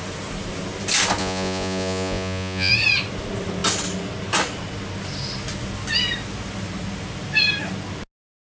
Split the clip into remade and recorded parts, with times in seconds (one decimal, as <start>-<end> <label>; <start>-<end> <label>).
0.0-1.2 recorded; 1.2-2.7 remade; 2.7-8.4 recorded